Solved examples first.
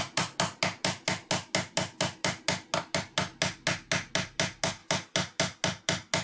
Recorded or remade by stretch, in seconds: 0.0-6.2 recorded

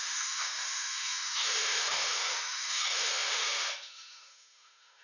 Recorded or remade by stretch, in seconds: 0.0-5.0 remade

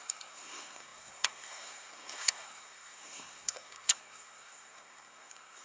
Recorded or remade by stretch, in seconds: 0.0-5.6 remade

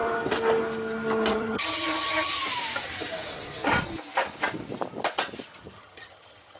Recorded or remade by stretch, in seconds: 0.0-1.3 recorded; 1.3-2.4 remade; 2.4-5.6 recorded; 5.6-6.6 remade

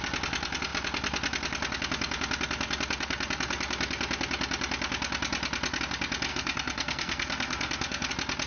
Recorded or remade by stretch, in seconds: 0.0-6.3 recorded; 6.3-8.1 remade; 8.1-8.5 recorded

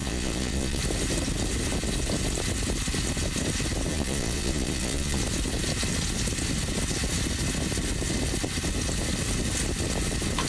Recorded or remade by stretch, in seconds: 0.0-0.8 remade; 0.8-3.9 recorded; 3.9-5.2 remade; 5.2-10.5 recorded

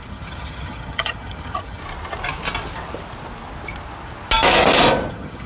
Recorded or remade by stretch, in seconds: 0.0-1.8 remade; 1.8-5.1 recorded; 5.1-5.5 remade